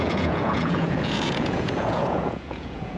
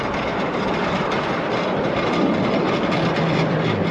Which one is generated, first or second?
first